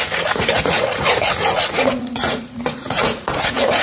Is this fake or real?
fake